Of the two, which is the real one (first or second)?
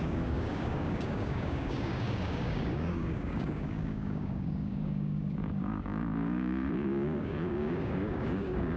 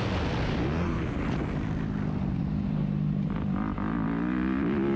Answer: second